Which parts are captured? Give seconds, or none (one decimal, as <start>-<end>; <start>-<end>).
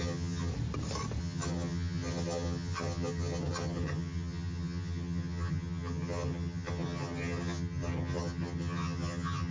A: 0.5-1.2